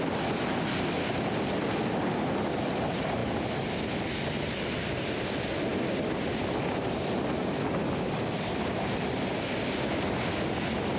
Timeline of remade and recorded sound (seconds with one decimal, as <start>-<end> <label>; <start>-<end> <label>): 0.0-11.0 recorded